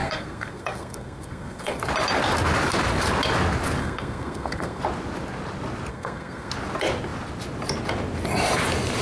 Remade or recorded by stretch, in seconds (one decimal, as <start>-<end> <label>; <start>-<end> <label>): 0.0-1.8 remade; 1.8-3.8 recorded; 3.8-4.8 remade; 4.8-5.9 recorded; 5.9-6.5 remade; 6.5-9.0 recorded